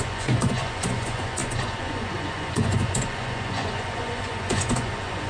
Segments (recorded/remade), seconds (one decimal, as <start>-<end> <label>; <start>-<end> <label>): 0.0-5.3 remade